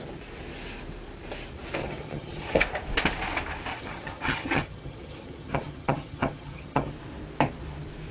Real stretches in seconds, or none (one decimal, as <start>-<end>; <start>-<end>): 0.0-1.8; 2.6-3.7; 6.9-8.1